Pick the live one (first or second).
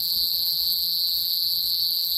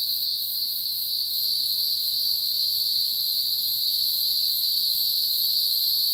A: second